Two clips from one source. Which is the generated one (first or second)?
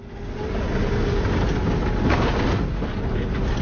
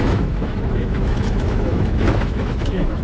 second